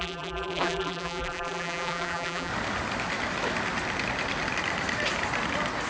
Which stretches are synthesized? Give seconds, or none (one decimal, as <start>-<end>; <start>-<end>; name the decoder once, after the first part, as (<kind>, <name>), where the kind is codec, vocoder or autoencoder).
0.0-2.5 (vocoder, BigVGAN v2)